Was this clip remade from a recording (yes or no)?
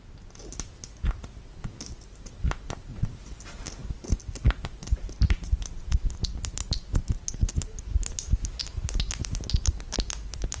no